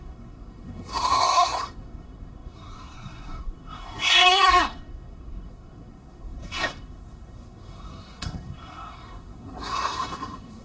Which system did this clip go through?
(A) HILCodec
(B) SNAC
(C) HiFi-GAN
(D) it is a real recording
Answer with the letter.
B